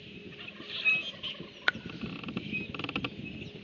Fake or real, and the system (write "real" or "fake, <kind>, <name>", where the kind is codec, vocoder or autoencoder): real